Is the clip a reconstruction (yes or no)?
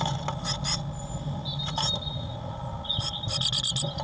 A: no